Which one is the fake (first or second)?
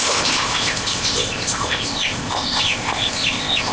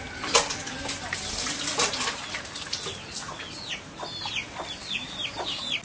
first